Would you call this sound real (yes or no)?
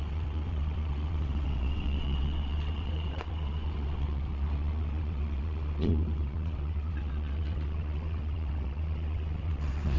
no